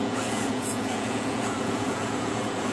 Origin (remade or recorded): remade